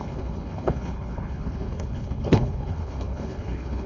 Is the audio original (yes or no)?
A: no